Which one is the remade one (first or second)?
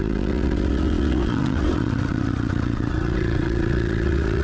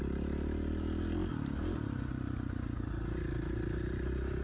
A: first